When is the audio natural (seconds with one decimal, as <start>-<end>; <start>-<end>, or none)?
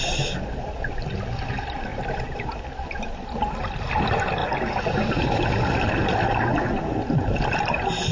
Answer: 0.0-1.9; 2.6-8.1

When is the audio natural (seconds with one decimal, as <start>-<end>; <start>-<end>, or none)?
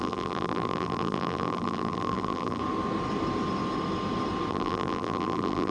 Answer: 2.6-4.5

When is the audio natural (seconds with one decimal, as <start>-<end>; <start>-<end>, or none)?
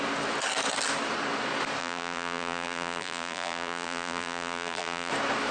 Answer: 0.0-1.8; 5.1-5.5